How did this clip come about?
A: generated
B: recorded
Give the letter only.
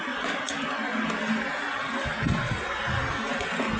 B